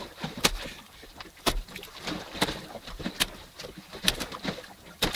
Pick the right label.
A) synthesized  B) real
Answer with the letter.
A